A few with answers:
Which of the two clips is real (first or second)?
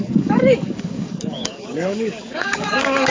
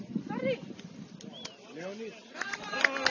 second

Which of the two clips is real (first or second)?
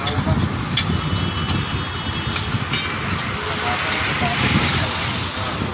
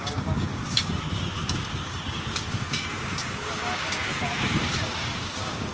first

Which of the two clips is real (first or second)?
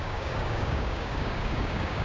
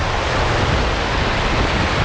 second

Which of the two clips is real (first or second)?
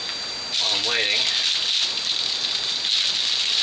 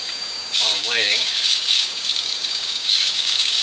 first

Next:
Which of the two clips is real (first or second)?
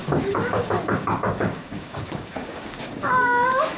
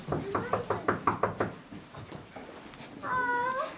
second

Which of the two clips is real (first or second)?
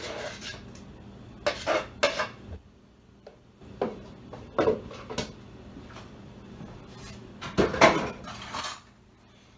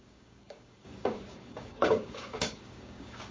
first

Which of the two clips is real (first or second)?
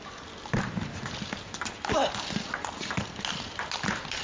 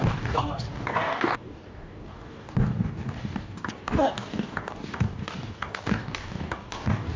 first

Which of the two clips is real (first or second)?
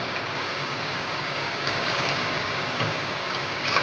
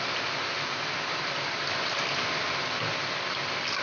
second